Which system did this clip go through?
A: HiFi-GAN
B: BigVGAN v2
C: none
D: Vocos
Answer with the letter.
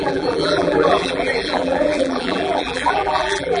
B